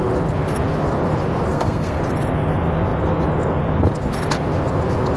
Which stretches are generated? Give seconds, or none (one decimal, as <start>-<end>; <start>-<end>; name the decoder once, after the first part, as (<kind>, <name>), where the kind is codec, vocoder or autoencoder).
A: 1.5-2.0 (codec, SNAC)